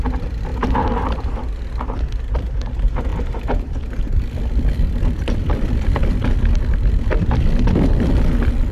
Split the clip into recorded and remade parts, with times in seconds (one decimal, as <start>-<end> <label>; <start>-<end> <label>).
0.0-3.1 recorded; 3.1-7.3 remade; 7.3-8.7 recorded